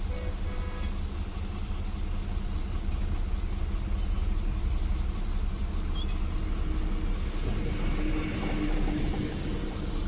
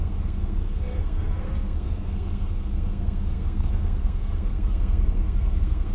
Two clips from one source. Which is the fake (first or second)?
second